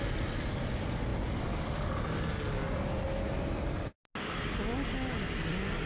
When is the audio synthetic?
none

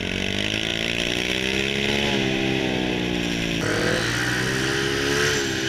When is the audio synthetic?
none